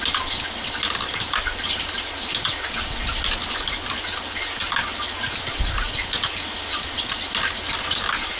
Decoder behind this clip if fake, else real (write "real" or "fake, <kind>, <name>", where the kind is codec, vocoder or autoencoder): real